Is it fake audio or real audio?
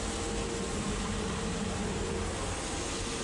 real